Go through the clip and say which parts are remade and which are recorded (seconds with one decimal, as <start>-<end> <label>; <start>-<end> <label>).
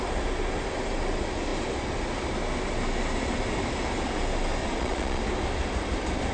0.0-4.6 recorded; 4.6-5.2 remade; 5.2-6.3 recorded